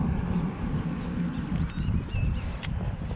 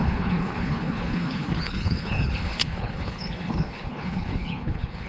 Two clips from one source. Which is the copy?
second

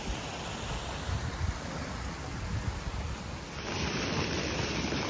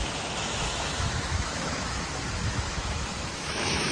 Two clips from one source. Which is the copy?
second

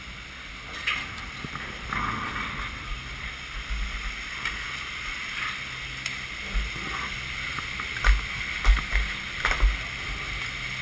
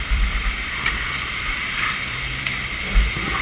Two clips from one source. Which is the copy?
second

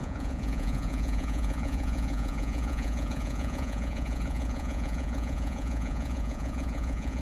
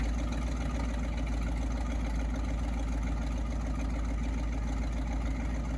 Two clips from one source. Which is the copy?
first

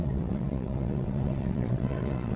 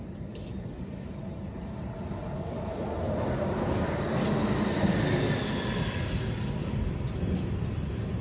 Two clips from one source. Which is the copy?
first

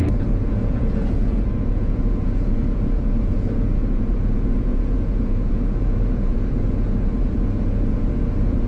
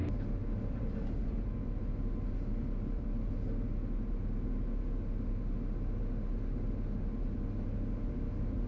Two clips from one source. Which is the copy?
first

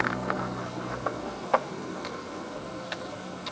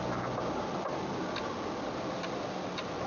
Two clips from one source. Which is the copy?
first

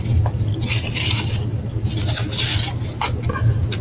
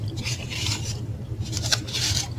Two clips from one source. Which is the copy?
second